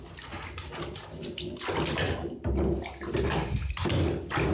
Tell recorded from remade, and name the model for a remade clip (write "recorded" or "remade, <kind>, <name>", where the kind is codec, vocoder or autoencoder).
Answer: recorded